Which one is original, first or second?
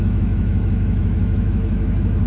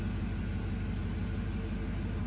second